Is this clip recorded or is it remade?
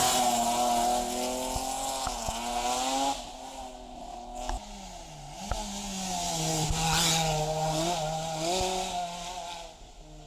recorded